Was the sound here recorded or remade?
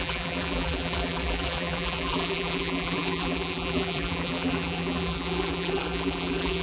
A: remade